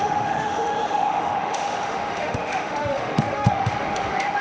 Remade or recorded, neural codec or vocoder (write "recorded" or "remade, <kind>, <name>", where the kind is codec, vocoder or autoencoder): remade, autoencoder, DAC-VAE